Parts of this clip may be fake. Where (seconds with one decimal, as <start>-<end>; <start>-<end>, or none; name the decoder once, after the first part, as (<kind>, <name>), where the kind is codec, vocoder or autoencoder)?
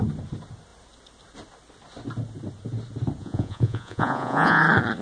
3.2-4.6 (vocoder, Vocos)